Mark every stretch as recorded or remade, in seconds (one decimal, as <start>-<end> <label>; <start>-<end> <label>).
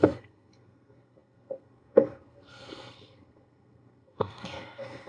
0.0-5.1 remade